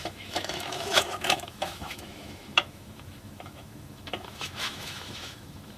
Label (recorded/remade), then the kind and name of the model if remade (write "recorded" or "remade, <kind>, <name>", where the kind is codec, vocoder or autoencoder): remade, autoencoder, DAC-VAE